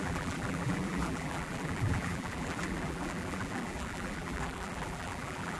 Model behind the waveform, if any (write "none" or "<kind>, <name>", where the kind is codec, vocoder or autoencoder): vocoder, BigVGAN v2